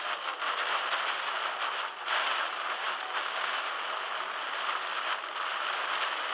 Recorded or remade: recorded